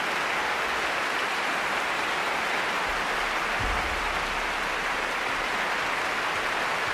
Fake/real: real